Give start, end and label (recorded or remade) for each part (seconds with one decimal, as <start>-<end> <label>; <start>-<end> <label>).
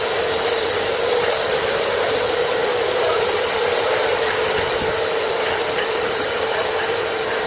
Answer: 0.0-2.6 recorded; 2.6-6.0 remade; 6.0-7.5 recorded